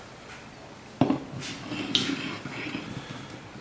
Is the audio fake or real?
real